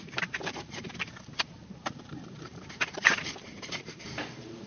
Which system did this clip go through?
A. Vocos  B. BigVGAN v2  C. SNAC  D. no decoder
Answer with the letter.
B